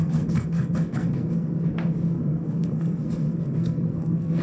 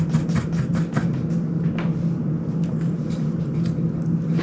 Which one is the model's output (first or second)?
first